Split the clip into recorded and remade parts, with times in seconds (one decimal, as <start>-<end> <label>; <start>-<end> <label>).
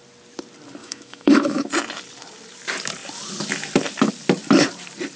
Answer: 0.0-0.8 recorded; 0.8-1.7 remade; 1.7-5.2 recorded